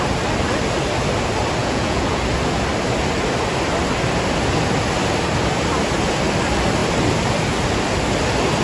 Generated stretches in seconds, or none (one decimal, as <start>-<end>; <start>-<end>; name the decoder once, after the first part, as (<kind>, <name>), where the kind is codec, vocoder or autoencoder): 1.6-2.2 (vocoder, Vocos)